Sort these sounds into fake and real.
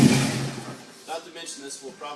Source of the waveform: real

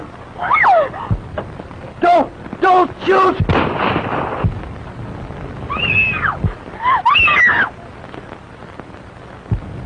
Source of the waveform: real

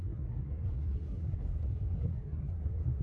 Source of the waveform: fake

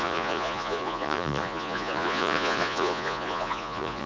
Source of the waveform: fake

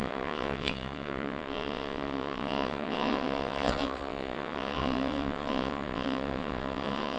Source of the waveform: fake